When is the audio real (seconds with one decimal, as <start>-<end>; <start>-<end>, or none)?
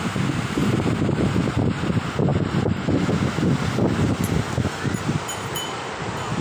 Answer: 0.0-0.6; 1.4-6.4